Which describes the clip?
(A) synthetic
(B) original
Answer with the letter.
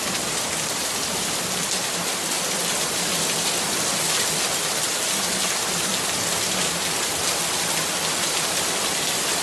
A